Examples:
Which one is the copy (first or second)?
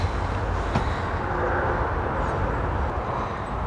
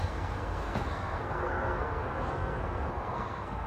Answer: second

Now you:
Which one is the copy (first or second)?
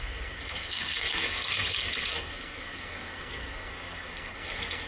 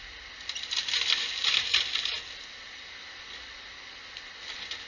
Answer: first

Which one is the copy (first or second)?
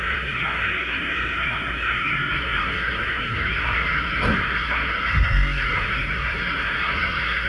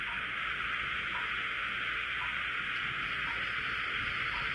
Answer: first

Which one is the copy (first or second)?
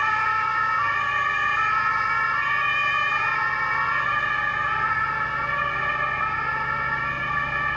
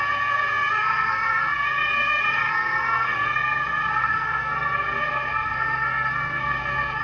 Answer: second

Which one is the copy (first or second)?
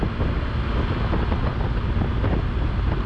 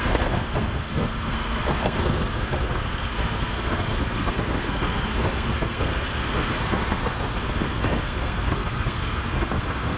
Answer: second